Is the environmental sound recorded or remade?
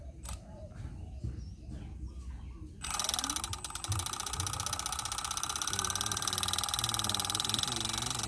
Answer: recorded